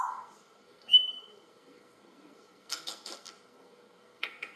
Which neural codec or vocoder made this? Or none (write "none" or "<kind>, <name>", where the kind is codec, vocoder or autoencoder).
codec, SNAC